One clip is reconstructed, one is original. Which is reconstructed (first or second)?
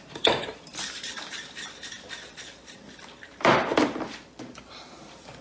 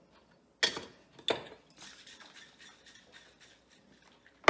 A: first